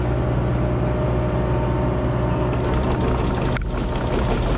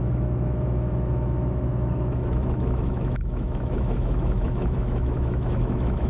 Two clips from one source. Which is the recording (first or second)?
first